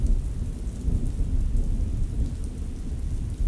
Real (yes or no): yes